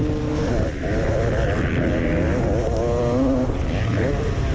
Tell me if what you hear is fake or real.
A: real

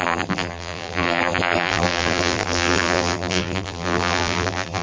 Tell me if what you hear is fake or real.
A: fake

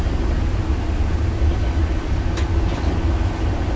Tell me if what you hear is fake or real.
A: real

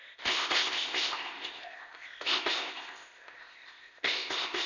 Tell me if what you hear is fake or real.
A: fake